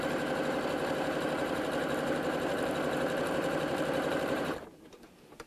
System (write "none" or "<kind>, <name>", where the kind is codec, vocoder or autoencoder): vocoder, BigVGAN v2